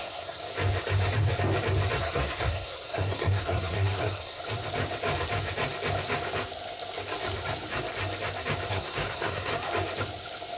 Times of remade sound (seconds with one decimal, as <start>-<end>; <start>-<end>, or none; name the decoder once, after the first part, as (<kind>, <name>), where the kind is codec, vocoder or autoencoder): 0.0-0.4 (codec, SNAC); 2.0-4.4; 8.7-9.5